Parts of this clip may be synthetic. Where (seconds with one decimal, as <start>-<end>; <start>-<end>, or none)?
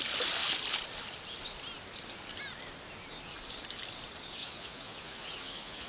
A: 4.4-5.9